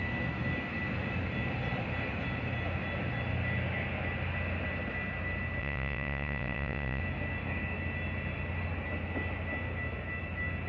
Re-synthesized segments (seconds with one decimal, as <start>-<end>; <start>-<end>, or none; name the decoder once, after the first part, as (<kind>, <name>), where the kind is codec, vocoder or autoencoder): 5.6-7.0 (vocoder, WaveNeXt)